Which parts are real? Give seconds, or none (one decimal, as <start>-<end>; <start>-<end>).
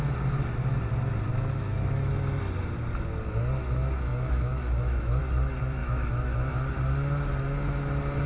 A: 0.0-1.3; 2.1-4.1; 5.2-5.8; 6.5-8.3